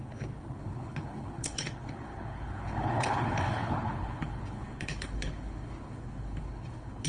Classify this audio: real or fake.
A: fake